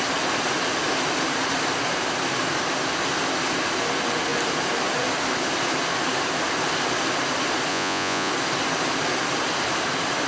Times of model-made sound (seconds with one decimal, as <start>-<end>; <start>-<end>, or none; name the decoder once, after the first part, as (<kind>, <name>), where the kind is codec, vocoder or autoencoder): 7.7-8.3 (vocoder, Vocos)

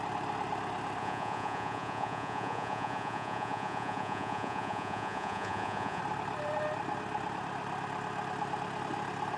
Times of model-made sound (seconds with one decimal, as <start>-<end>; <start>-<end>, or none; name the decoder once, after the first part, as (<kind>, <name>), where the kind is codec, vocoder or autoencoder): 1.0-6.0 (vocoder, Vocos)

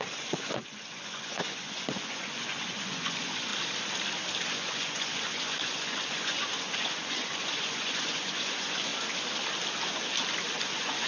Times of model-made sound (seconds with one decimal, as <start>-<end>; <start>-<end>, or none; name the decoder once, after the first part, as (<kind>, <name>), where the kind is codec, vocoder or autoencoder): 0.0-3.5 (vocoder, Vocos); 4.5-8.9; 10.6-11.1

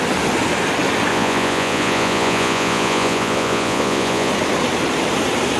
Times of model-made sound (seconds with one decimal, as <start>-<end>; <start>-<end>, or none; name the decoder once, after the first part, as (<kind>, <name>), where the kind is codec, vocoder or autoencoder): 1.1-4.3 (vocoder, Vocos)

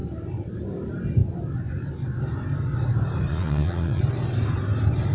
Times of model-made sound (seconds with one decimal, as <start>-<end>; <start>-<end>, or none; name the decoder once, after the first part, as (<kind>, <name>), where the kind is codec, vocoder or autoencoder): 3.3-4.0 (vocoder, Vocos)

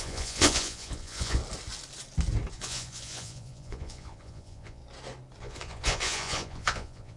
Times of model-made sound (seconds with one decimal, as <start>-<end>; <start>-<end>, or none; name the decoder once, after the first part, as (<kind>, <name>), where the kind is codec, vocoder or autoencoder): 0.0-1.4 (vocoder, Vocos); 2.5-4.8; 5.4-7.2

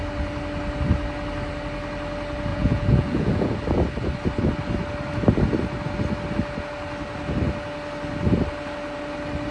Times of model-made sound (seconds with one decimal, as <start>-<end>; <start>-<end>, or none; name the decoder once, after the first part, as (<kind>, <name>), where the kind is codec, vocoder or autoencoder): 2.5-3.5 (vocoder, Vocos)

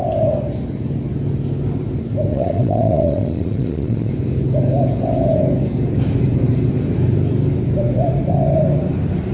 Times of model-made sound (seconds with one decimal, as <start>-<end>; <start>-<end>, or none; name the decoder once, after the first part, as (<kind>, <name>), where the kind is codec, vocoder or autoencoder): 2.3-4.1 (vocoder, Vocos)